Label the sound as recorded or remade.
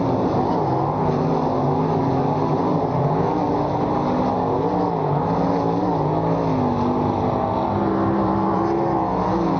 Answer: recorded